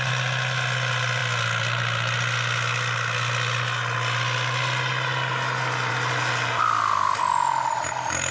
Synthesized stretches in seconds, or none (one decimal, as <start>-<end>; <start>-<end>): none